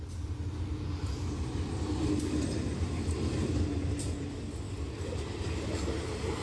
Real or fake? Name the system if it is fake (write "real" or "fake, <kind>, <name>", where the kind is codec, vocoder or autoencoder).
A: real